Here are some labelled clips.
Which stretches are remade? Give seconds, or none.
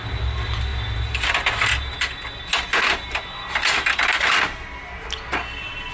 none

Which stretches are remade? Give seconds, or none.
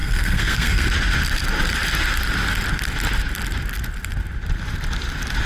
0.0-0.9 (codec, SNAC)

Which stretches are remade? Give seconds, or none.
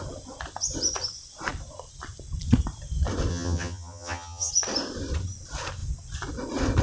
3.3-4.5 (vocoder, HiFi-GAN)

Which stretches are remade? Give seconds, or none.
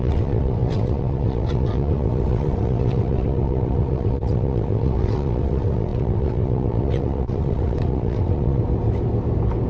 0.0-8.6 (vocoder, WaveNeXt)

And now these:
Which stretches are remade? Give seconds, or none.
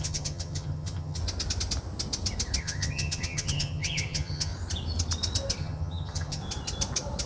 0.0-1.2 (vocoder, HiFi-GAN); 2.6-4.5; 5.6-6.4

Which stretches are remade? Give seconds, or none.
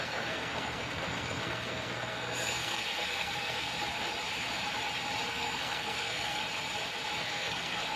0.0-3.7 (codec, SNAC); 5.3-6.4; 7.2-8.0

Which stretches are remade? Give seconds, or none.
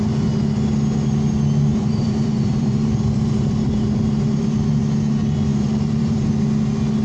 1.7-4.8 (vocoder, BigVGAN v2); 5.5-6.3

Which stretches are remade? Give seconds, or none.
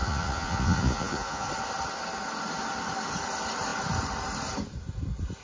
0.0-1.5 (vocoder, Vocos)